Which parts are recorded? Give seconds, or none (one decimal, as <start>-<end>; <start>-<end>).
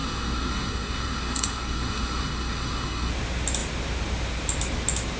3.1-5.2